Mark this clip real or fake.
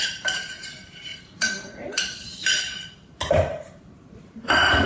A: fake